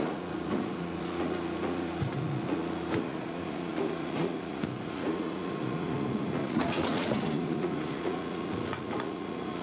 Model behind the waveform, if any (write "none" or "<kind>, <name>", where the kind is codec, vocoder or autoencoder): vocoder, Vocos